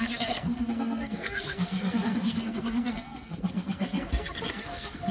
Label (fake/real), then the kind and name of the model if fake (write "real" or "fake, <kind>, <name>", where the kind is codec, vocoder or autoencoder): fake, codec, SNAC